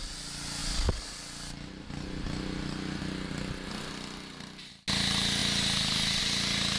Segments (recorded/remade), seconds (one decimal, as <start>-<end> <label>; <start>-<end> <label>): 0.0-6.8 recorded